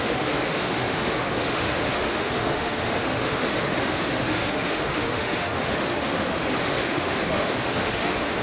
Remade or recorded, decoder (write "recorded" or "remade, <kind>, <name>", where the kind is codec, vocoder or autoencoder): remade, autoencoder, DAC-VAE